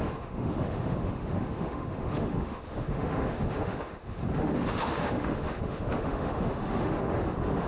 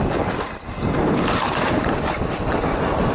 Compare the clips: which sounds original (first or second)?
second